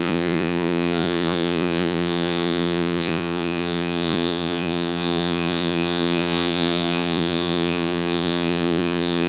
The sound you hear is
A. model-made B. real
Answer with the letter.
A